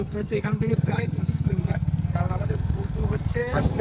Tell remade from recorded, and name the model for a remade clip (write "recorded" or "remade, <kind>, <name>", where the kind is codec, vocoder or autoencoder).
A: remade, codec, SNAC